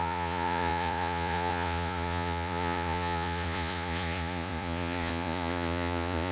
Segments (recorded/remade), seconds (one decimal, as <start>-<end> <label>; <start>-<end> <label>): 0.0-6.3 remade